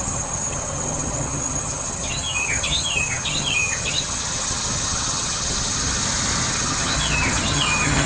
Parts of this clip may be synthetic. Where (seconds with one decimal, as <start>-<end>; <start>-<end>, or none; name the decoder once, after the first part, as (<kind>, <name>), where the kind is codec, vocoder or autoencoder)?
0.0-6.0 (vocoder, HiFi-GAN); 6.5-8.1